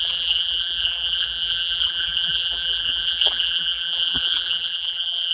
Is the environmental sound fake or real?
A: fake